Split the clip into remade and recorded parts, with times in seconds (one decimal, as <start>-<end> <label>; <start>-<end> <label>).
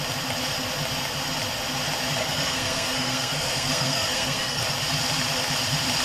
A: 0.0-2.2 recorded; 2.2-4.6 remade; 4.6-6.0 recorded